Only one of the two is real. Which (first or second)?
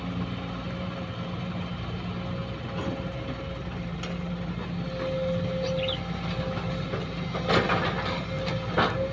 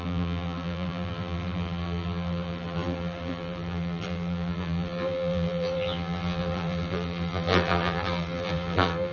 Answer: first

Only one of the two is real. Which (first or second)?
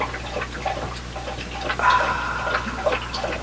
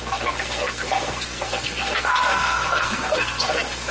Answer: first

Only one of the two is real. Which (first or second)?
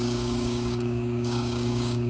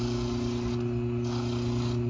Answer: second